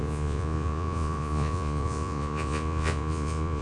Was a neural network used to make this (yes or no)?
yes